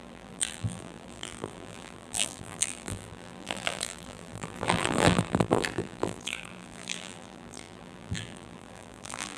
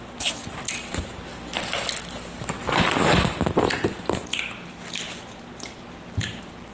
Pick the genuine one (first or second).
second